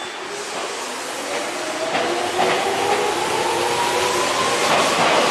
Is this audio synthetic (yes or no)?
no